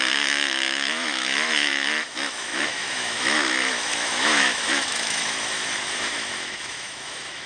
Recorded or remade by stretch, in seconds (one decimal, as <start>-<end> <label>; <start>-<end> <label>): 0.0-7.5 remade